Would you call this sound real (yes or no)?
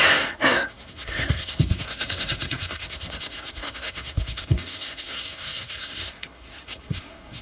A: no